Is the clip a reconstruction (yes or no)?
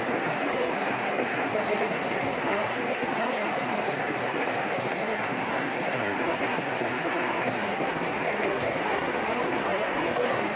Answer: yes